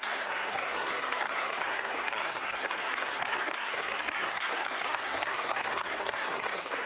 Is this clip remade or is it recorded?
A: remade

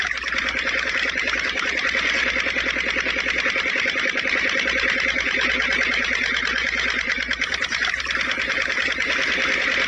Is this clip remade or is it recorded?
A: recorded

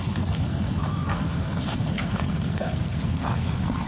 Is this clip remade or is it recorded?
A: remade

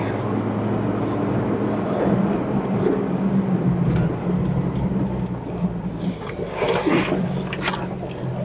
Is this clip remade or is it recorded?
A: recorded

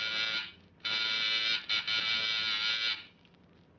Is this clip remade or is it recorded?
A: recorded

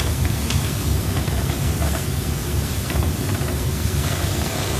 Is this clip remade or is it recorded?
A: remade